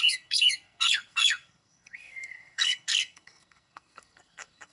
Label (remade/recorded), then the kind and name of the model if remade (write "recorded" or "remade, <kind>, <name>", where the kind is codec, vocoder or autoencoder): remade, codec, SNAC